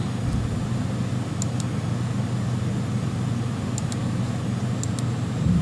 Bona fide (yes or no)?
yes